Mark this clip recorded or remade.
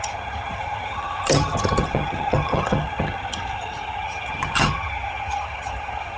remade